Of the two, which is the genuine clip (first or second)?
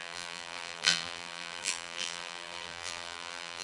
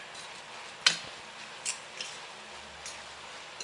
second